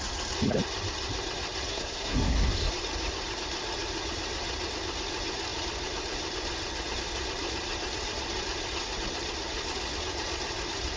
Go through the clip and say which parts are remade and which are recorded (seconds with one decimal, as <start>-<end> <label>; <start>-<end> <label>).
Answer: 0.0-1.7 recorded; 1.7-2.7 remade; 2.7-11.0 recorded